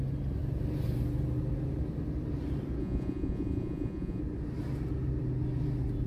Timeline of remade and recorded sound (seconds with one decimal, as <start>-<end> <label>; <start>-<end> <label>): 0.0-2.8 recorded; 2.8-4.2 remade; 4.2-6.1 recorded